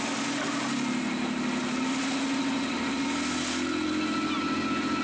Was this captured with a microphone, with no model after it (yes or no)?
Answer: yes